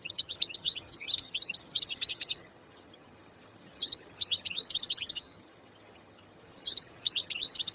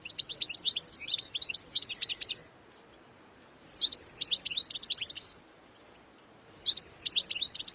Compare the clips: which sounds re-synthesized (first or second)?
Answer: first